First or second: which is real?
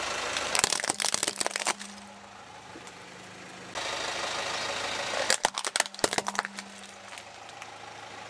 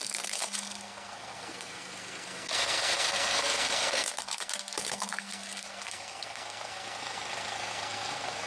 first